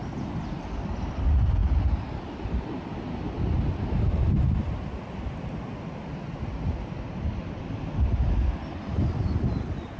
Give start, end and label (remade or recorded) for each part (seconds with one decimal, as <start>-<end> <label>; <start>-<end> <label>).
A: 0.0-10.0 recorded